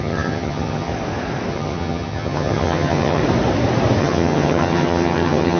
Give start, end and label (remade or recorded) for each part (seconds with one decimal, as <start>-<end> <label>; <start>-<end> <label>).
0.0-0.9 remade; 0.9-1.5 recorded; 1.5-3.2 remade; 3.2-4.0 recorded; 4.0-5.6 remade